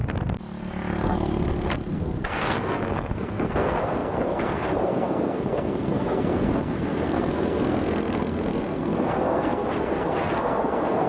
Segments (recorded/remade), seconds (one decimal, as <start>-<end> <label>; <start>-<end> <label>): 0.0-0.9 recorded; 0.9-11.1 remade